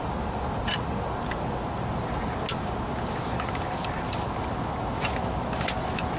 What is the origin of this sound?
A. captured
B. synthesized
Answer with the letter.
A